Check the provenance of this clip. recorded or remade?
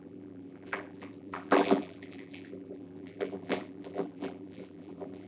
remade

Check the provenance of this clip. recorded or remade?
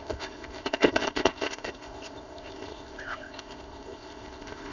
remade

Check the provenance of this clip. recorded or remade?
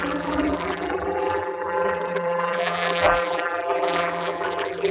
remade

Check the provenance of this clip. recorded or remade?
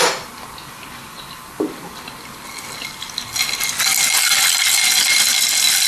recorded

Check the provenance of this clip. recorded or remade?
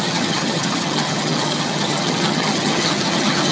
remade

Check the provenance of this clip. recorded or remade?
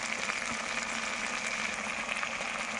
recorded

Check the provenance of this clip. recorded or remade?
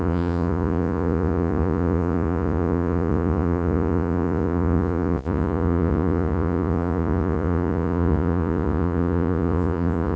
remade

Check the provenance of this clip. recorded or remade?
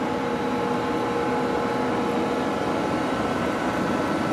recorded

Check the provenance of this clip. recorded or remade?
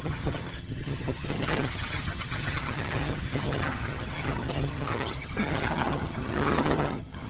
remade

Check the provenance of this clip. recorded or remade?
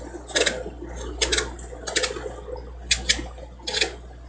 recorded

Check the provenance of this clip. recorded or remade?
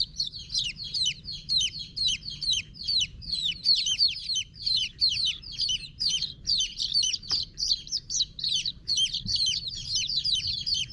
remade